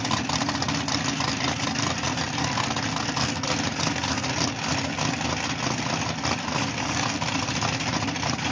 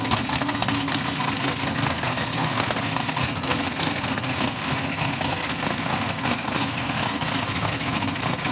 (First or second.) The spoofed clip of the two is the second